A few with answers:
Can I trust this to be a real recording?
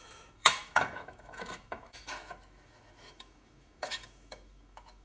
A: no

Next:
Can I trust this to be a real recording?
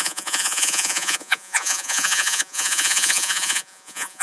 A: no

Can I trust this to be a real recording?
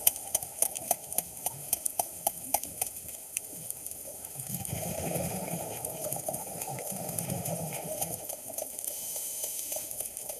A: no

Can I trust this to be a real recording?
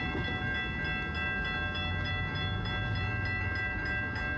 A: yes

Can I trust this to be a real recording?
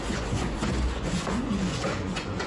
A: no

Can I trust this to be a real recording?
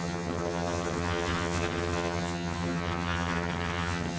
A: no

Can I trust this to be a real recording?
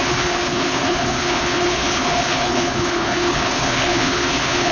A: no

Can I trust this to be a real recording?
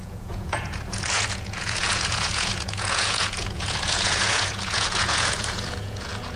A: no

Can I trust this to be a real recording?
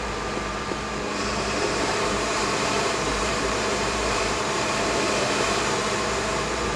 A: no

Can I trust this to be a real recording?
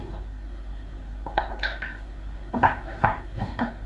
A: no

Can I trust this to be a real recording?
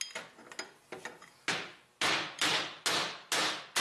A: yes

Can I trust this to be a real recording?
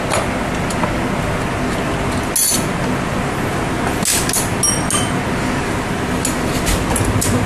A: yes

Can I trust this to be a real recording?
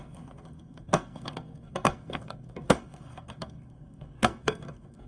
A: no